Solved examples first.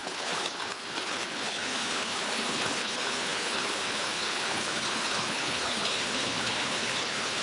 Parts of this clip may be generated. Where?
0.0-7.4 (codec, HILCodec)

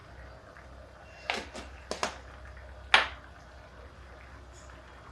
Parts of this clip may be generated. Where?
none

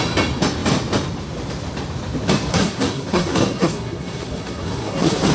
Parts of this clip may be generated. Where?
2.5-5.3 (codec, SNAC)

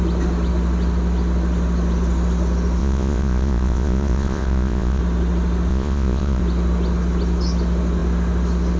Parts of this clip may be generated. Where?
2.8-5.0 (vocoder, Vocos); 5.7-6.4

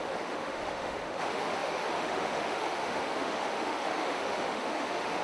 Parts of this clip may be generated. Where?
0.0-5.2 (autoencoder, DAC-VAE)